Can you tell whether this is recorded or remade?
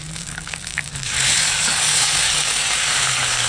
remade